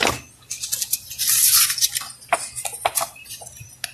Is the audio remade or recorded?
recorded